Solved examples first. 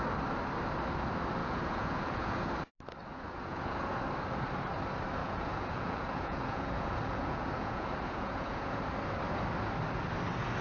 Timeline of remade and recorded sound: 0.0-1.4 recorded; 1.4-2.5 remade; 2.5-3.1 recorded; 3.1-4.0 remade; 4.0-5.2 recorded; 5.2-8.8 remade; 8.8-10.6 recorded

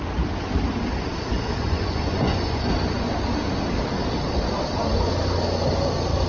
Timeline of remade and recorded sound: 0.0-1.3 recorded; 1.3-2.7 remade; 2.7-6.3 recorded

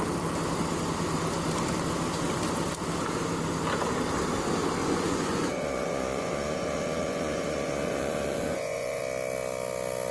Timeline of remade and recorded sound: 0.0-4.8 recorded; 4.8-9.0 remade; 9.0-10.1 recorded

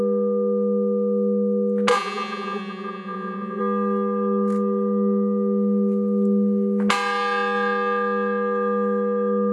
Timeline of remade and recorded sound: 0.0-1.9 recorded; 1.9-3.6 remade; 3.6-9.5 recorded

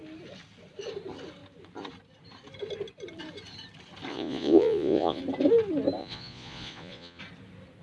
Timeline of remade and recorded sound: 0.0-4.1 recorded; 4.1-5.2 remade; 5.2-6.0 recorded; 6.0-7.2 remade; 7.2-7.8 recorded

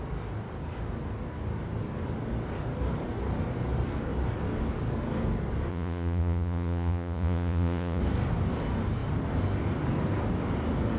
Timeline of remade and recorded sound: 0.0-5.7 recorded; 5.7-8.0 remade; 8.0-11.0 recorded